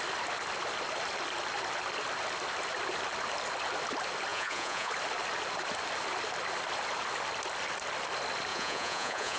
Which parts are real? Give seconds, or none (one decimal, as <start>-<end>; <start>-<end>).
0.0-4.3; 4.9-8.5